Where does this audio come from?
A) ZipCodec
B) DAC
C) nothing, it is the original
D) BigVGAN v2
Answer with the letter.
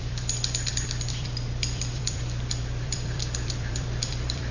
D